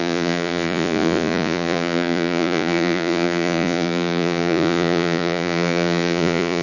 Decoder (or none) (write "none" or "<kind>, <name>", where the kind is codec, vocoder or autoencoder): vocoder, Vocos